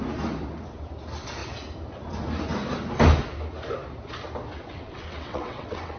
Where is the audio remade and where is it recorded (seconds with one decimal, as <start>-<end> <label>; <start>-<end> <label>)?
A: 0.0-4.5 recorded; 4.5-6.0 remade